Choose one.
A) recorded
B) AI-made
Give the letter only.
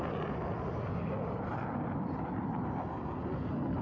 A